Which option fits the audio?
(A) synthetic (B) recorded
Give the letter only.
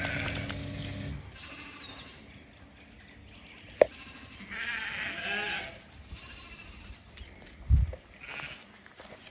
B